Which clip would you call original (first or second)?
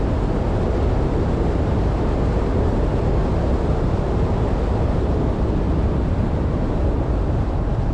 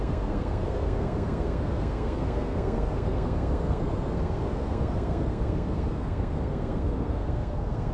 first